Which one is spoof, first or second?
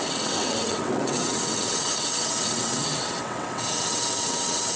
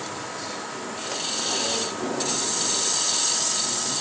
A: first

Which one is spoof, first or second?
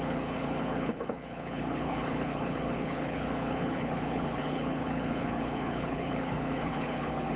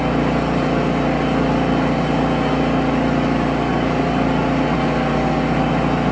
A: first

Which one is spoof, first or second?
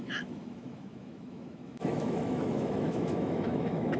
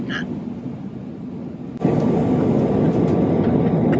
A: first